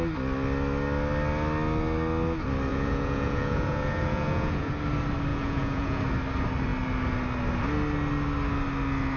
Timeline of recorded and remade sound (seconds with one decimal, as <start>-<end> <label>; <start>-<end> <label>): 0.0-2.7 recorded; 2.7-4.7 remade; 4.7-5.3 recorded; 5.3-6.0 remade; 6.0-9.2 recorded